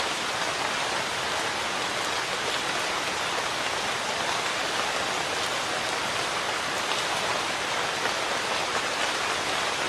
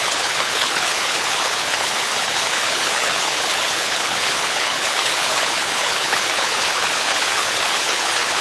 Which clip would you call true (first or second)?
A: first